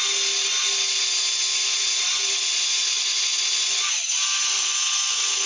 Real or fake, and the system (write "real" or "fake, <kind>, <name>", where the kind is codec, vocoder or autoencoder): real